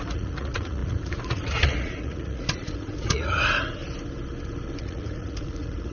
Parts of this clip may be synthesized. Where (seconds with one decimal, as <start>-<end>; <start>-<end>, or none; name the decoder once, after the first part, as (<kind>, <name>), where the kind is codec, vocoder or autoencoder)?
0.0-3.8 (vocoder, Vocos); 4.8-5.9